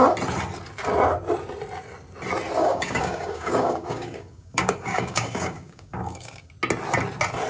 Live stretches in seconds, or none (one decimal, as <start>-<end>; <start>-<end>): 0.0-2.6; 6.5-7.5